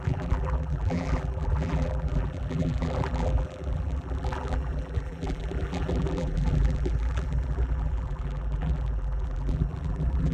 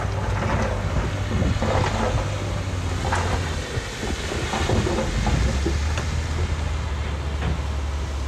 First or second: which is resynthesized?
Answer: first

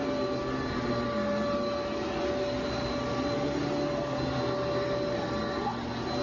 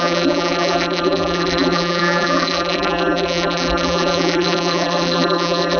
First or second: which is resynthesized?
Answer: second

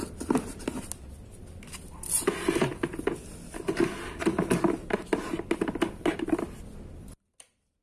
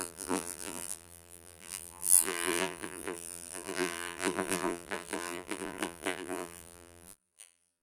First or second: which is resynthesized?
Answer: second